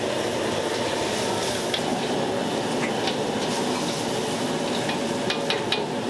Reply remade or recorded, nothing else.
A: recorded